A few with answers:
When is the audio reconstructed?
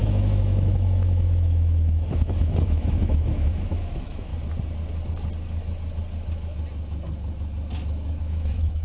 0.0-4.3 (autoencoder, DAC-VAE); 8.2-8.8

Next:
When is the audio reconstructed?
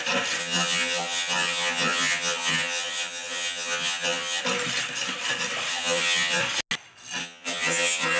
0.4-4.4 (vocoder, HiFi-GAN); 5.7-6.4; 7.2-8.2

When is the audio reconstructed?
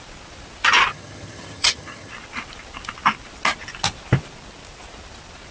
0.9-2.1 (vocoder, HiFi-GAN)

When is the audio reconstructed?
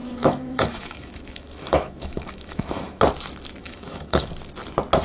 0.0-3.0 (autoencoder, DAC-VAE); 3.6-4.3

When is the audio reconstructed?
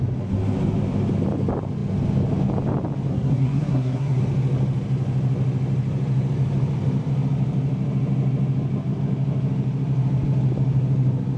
3.1-4.2 (codec, SNAC)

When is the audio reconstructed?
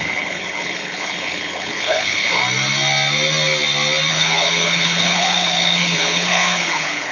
0.0-2.4 (codec, HILCodec); 4.1-7.1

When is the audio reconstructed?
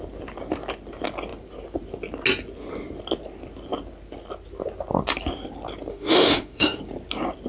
5.9-6.8 (autoencoder, DAC-VAE)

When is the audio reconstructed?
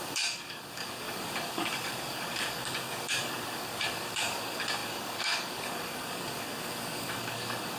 0.0-7.8 (codec, DAC)